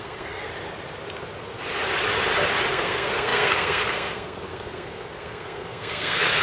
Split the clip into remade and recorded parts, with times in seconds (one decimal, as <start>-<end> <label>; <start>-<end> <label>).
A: 0.0-0.5 remade; 0.5-2.7 recorded; 2.7-6.4 remade